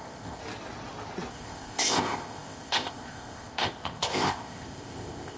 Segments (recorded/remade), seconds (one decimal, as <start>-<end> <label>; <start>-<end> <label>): 0.0-0.4 remade; 0.4-1.3 recorded; 1.3-5.4 remade